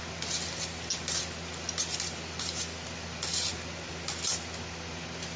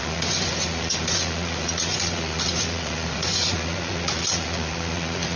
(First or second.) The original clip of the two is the first